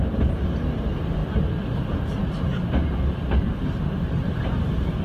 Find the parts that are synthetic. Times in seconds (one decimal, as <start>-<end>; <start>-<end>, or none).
none